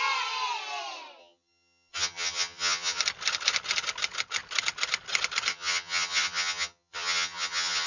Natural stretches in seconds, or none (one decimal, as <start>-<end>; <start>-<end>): 0.0-1.2; 3.0-5.5